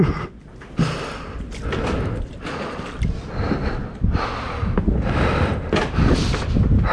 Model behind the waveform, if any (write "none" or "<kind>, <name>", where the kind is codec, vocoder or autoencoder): none